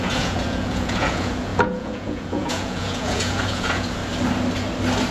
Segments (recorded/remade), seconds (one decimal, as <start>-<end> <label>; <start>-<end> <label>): 0.0-4.0 remade; 4.0-5.1 recorded